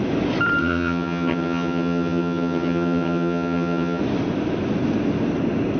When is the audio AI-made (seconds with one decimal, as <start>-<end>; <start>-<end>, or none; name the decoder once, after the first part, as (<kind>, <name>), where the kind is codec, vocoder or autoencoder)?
0.6-4.0 (vocoder, HiFi-GAN)